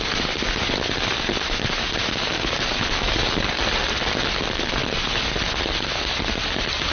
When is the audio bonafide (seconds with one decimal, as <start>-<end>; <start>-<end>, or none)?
0.0-6.9